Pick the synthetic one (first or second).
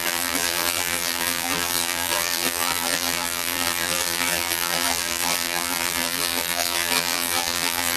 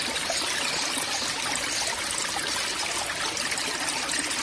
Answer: first